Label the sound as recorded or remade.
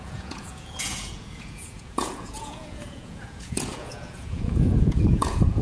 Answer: remade